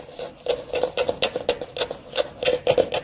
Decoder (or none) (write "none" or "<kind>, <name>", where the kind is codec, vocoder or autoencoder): none